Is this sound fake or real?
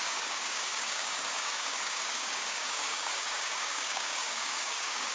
fake